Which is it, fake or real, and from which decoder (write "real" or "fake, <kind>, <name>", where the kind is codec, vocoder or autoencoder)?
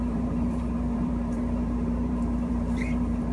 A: fake, vocoder, BigVGAN v2